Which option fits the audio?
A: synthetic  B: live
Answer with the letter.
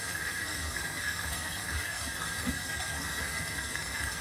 A